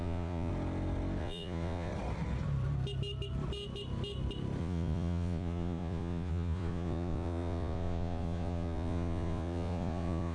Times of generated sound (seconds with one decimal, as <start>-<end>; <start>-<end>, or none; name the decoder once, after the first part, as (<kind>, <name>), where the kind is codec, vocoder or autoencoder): 0.0-0.5 (vocoder, Vocos); 1.2-1.9; 4.6-10.3